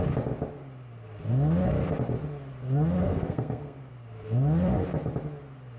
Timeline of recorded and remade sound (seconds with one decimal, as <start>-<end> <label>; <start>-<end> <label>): 0.0-3.0 recorded; 3.0-3.9 remade; 3.9-5.8 recorded